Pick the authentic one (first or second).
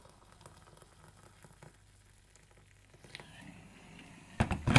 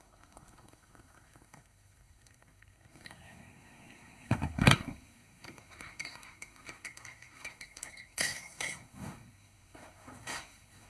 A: first